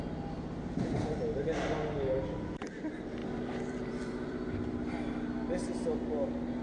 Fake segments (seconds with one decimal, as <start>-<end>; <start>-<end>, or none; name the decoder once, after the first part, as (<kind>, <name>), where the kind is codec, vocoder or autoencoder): 3.2-5.1 (vocoder, BigVGAN v2)

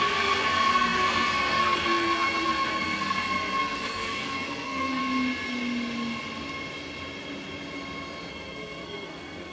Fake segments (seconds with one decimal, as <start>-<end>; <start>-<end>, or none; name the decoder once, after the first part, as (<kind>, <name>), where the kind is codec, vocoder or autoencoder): 0.0-5.0 (codec, SNAC); 8.3-9.5

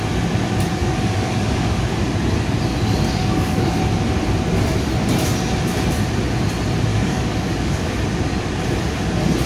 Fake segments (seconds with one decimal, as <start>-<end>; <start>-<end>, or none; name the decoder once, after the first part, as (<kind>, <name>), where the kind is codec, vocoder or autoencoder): 0.8-1.9 (codec, DAC); 3.2-3.8; 6.9-7.9

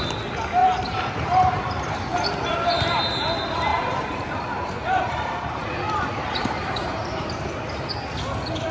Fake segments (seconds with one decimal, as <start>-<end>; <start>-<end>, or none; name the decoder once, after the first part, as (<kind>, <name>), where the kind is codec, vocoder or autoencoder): 0.6-1.9 (vocoder, BigVGAN v2); 3.7-7.4

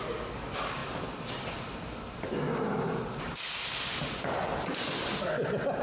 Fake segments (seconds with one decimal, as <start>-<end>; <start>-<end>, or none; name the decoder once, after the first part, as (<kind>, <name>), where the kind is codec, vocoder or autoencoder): none

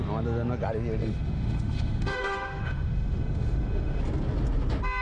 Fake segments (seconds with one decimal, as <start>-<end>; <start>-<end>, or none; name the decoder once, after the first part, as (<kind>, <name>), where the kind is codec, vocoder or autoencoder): 1.0-4.0 (autoencoder, DAC-VAE)